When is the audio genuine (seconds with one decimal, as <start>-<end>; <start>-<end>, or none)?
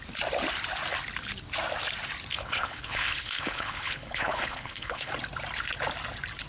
0.0-2.3; 5.1-6.5